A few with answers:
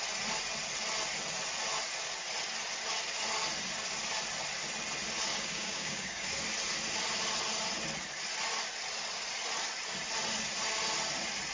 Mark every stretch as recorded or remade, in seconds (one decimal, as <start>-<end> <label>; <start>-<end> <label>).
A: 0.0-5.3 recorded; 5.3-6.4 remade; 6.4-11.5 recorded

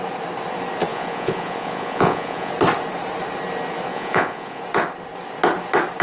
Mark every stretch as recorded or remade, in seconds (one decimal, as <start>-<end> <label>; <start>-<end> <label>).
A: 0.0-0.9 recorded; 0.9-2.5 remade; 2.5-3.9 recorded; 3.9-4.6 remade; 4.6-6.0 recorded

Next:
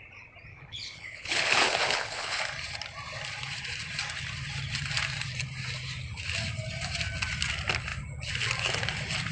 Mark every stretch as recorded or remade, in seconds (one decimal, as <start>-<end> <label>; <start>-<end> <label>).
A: 0.0-0.5 recorded; 0.5-2.4 remade; 2.4-9.3 recorded

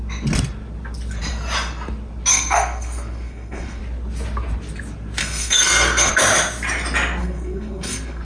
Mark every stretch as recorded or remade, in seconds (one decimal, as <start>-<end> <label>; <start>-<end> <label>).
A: 0.0-2.3 recorded; 2.3-3.8 remade; 3.8-5.2 recorded; 5.2-6.1 remade; 6.1-7.2 recorded; 7.2-8.2 remade

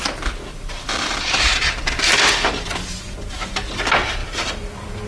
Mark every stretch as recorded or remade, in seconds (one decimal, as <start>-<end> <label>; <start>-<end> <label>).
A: 0.0-0.5 recorded; 0.5-1.8 remade; 1.8-4.2 recorded; 4.2-5.1 remade

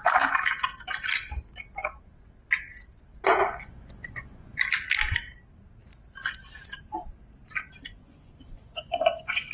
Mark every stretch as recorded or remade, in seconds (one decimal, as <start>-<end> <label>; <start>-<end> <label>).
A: 0.0-3.4 recorded; 3.4-4.6 remade; 4.6-8.0 recorded; 8.0-9.5 remade

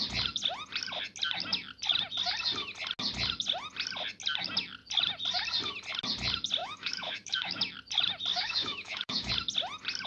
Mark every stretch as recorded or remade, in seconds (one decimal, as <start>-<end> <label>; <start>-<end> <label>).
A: 0.0-6.6 recorded; 6.6-7.6 remade; 7.6-8.3 recorded; 8.3-9.3 remade; 9.3-10.1 recorded

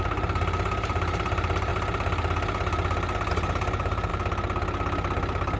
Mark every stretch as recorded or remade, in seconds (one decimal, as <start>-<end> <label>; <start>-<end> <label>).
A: 0.0-1.7 remade; 1.7-3.3 recorded; 3.3-4.1 remade; 4.1-5.6 recorded